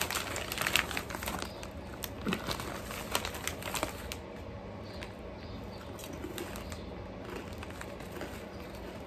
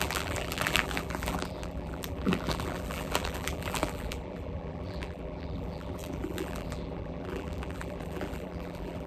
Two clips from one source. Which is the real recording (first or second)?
first